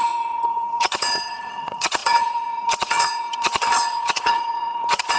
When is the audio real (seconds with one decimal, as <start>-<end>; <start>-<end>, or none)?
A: none